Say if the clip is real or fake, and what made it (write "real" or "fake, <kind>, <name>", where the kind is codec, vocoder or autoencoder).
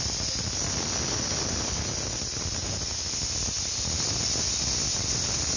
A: real